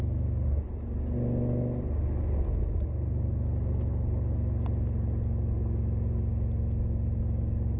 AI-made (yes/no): no